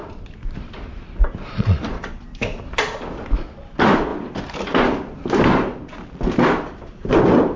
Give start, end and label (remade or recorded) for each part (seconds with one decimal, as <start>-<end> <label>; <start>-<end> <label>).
0.0-7.6 recorded